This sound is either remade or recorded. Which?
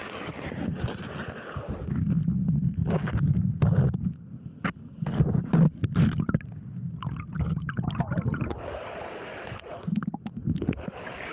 recorded